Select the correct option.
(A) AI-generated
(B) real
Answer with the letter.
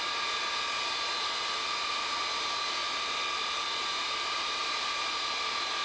B